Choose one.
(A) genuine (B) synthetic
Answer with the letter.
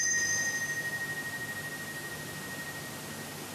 A